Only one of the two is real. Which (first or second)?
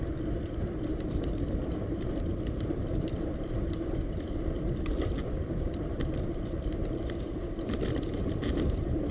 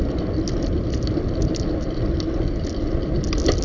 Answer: second